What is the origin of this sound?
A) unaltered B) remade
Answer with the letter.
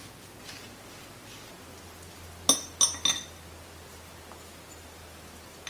A